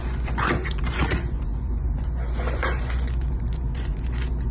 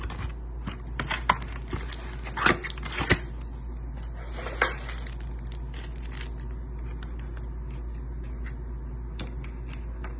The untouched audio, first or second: second